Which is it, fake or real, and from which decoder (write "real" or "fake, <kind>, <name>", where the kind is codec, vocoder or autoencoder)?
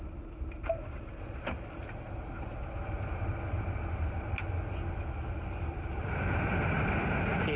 real